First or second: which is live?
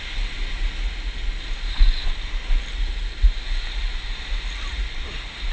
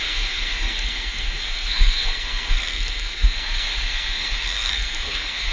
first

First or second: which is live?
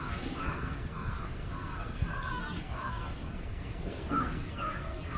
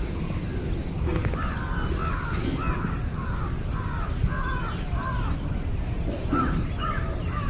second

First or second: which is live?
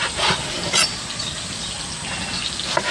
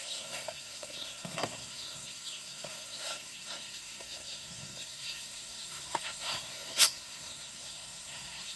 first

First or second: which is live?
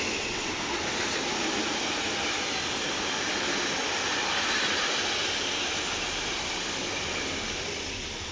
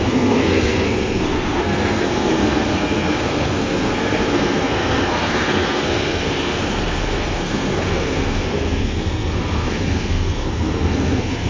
first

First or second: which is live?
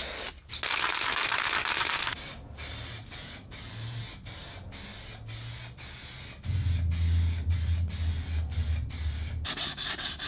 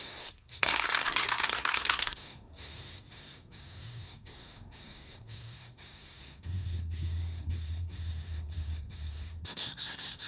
first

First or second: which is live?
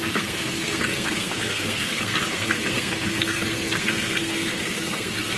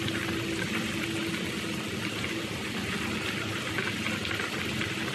second